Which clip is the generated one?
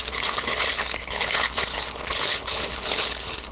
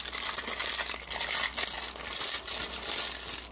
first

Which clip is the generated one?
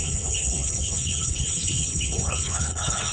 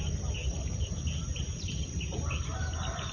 first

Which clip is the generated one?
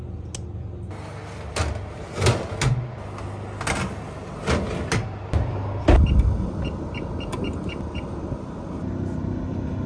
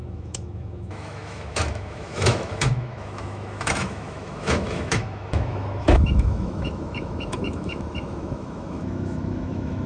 second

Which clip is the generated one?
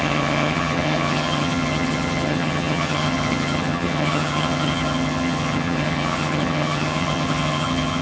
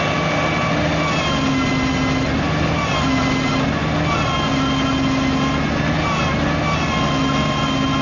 first